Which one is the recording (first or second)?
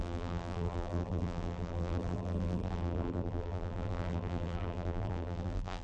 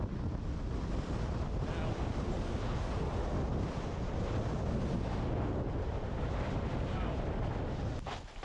second